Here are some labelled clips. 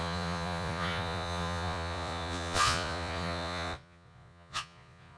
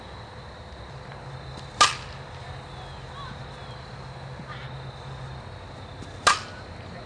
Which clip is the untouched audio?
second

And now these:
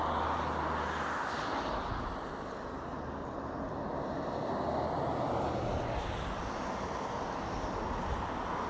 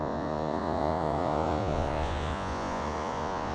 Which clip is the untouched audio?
first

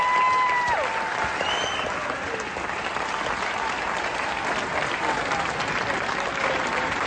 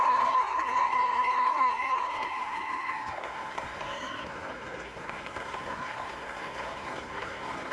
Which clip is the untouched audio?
first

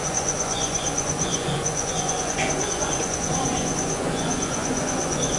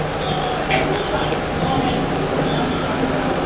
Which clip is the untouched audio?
second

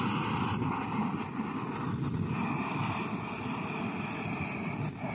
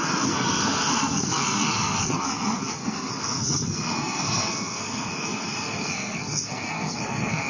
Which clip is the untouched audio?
first